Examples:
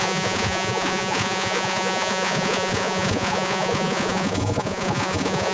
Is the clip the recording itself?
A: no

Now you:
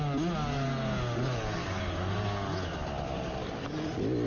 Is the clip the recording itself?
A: yes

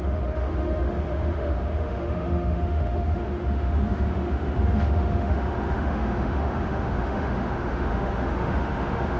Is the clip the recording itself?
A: no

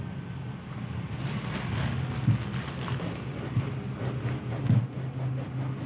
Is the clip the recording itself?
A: yes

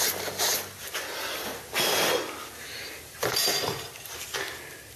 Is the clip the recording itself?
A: yes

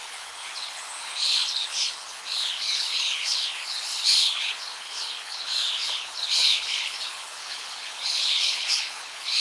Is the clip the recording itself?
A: no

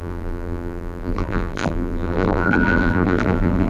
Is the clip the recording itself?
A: no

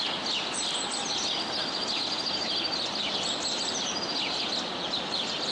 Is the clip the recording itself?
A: yes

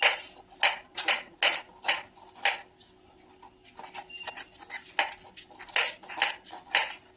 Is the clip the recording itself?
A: yes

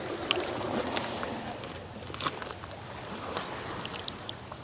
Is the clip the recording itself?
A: yes